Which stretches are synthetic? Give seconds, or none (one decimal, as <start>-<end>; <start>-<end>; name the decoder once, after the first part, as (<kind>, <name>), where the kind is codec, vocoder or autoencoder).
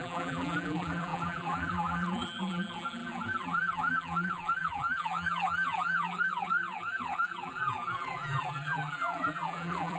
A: 0.0-10.0 (vocoder, BigVGAN v2)